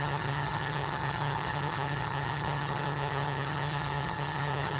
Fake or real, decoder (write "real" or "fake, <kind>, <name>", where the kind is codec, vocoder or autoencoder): fake, vocoder, HiFi-GAN